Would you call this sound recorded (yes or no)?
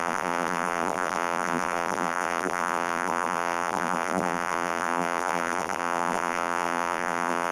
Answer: no